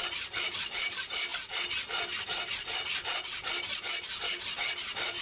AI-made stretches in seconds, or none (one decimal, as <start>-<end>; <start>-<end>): none